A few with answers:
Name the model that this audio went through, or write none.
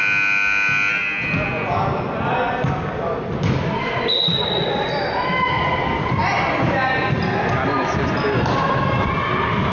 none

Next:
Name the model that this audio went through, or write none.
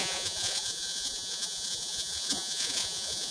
vocoder, Vocos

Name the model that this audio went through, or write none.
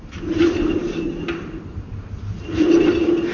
none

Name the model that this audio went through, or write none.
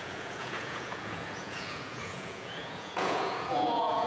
vocoder, Vocos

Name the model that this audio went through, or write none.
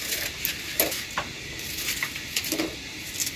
none